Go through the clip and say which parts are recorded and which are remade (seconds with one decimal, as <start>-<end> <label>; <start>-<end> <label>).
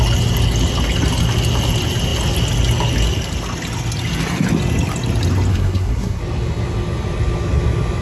0.0-5.5 recorded; 5.5-6.2 remade; 6.2-8.0 recorded